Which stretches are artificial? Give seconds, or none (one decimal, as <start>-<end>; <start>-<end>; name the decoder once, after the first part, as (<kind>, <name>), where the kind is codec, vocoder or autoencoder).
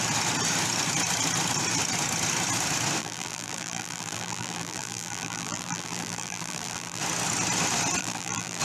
3.0-7.0 (vocoder, BigVGAN v2); 8.0-8.6